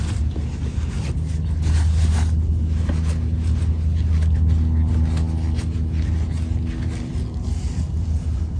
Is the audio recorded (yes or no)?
yes